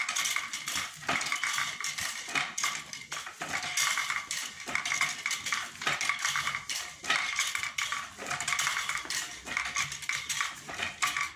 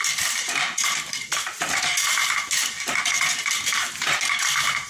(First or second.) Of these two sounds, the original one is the first